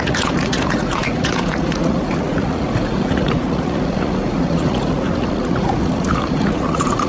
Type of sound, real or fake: fake